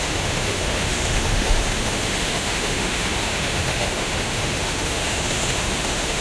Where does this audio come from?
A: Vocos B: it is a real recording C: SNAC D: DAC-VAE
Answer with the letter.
D